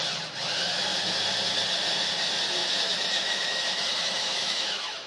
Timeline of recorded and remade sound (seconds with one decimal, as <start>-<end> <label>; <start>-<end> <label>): 0.0-2.6 recorded; 2.6-5.1 remade